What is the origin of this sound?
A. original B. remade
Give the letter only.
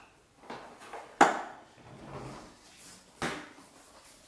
A